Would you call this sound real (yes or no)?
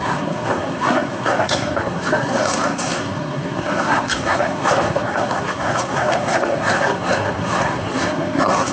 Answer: no